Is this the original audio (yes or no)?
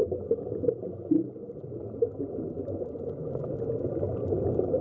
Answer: yes